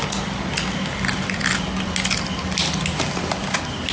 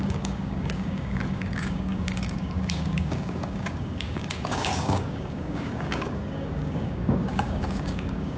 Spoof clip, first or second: second